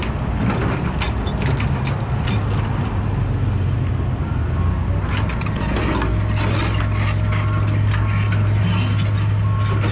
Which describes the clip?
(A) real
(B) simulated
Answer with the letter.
A